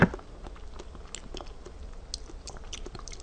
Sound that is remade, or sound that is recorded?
recorded